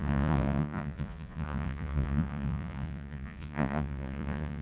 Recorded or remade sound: remade